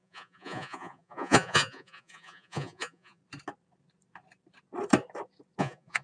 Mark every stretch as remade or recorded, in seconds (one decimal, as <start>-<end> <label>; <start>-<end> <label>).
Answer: 0.0-3.2 remade; 3.2-5.6 recorded; 5.6-6.0 remade